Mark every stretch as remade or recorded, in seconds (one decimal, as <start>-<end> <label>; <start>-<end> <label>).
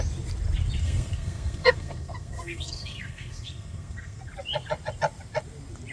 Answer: 0.0-0.8 recorded; 0.8-4.3 remade; 4.3-5.9 recorded